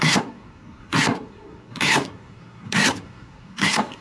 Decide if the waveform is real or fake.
fake